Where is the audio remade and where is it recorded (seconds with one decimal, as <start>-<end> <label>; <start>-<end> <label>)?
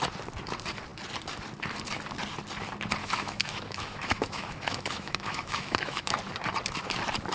0.0-3.0 recorded; 3.0-6.2 remade; 6.2-7.3 recorded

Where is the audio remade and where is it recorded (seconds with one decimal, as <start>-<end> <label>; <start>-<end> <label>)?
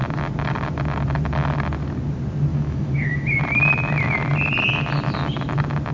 0.0-2.5 recorded; 2.5-3.4 remade; 3.4-5.9 recorded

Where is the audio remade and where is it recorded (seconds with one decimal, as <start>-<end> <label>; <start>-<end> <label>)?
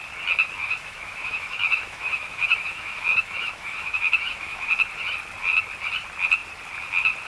0.0-0.6 recorded; 0.6-4.7 remade; 4.7-7.3 recorded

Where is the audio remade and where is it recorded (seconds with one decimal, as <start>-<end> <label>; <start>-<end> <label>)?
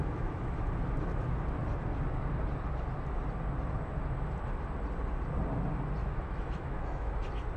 0.0-0.5 remade; 0.5-6.0 recorded; 6.0-7.1 remade; 7.1-7.6 recorded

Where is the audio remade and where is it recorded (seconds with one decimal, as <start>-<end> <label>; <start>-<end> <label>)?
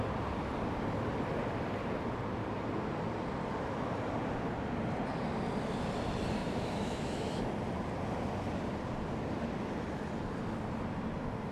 0.0-6.4 recorded; 6.4-7.4 remade; 7.4-11.5 recorded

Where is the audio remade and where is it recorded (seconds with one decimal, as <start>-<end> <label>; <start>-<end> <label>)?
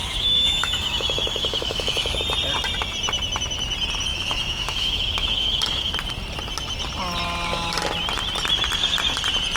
0.0-2.2 remade; 2.2-4.1 recorded; 4.1-5.9 remade; 5.9-9.6 recorded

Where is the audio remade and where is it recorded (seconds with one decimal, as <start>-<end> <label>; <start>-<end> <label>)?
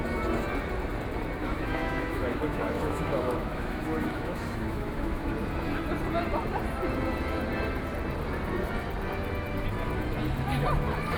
0.0-1.4 recorded; 1.4-5.3 remade; 5.3-11.2 recorded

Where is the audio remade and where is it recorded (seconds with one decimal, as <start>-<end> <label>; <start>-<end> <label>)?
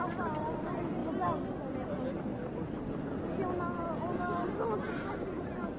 0.0-5.8 recorded